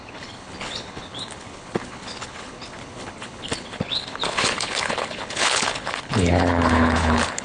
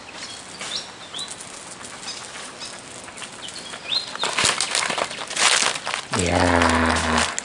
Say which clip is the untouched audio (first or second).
second